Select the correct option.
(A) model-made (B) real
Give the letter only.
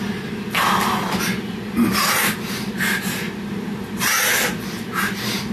B